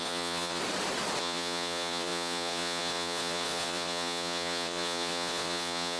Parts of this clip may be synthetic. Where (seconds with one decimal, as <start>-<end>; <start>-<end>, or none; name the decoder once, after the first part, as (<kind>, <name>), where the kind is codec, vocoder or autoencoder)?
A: 0.0-0.6 (vocoder, Vocos); 1.2-6.0